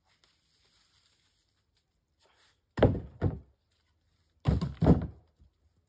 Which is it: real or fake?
real